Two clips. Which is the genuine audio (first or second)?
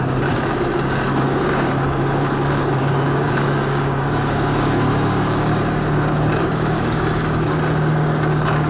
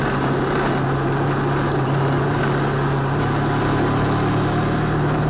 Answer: second